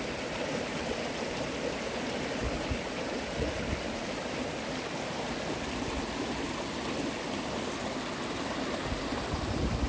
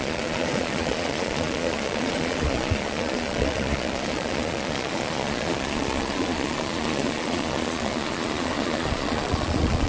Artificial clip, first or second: second